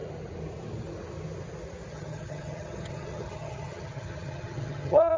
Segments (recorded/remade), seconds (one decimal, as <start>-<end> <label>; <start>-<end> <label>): 0.0-1.9 recorded; 1.9-5.2 remade